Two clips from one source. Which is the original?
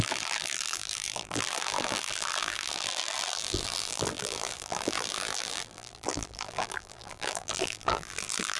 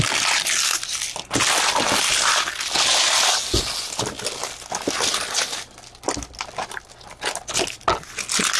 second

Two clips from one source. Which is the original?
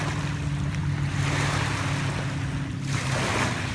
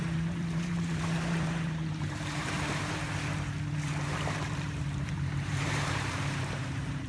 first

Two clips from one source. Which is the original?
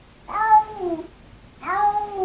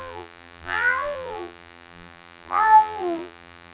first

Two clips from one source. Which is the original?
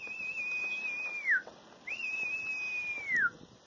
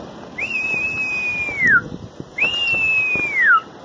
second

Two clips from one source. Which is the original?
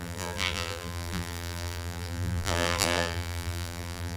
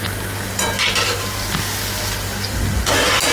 second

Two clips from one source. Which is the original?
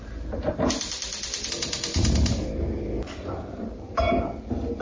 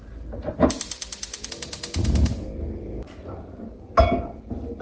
second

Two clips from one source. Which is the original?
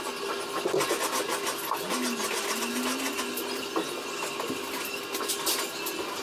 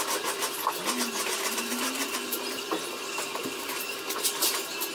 first